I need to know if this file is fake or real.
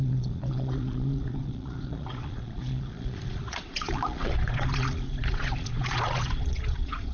fake